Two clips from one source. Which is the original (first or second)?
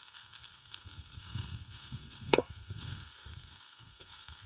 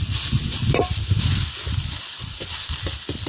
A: second